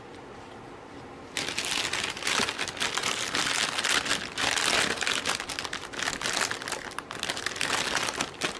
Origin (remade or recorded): recorded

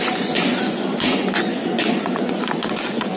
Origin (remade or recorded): remade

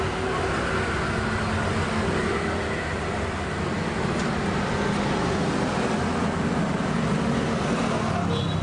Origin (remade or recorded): recorded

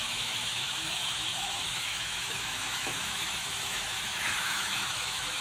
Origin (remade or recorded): remade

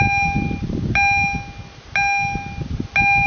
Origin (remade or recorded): recorded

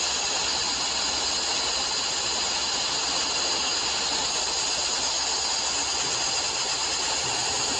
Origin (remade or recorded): recorded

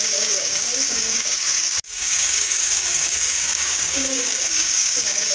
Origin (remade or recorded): remade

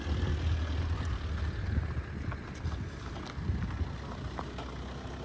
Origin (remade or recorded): recorded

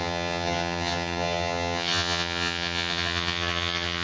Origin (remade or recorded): remade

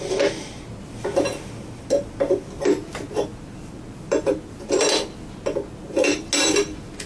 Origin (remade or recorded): recorded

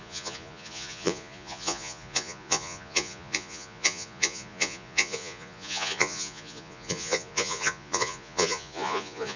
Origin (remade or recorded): remade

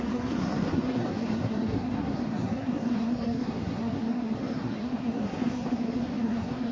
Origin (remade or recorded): remade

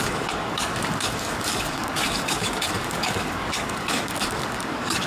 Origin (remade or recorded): remade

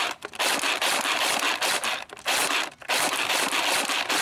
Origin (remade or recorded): recorded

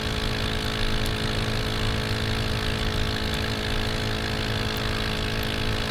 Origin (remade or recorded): recorded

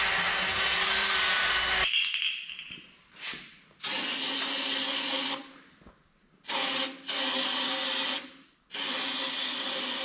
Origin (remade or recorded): recorded